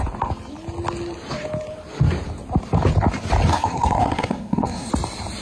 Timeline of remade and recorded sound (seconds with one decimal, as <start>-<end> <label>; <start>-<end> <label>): 0.0-3.5 recorded; 3.5-4.9 remade; 4.9-5.4 recorded